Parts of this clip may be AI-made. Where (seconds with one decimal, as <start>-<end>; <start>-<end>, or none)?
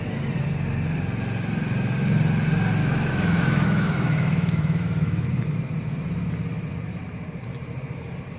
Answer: 2.8-5.4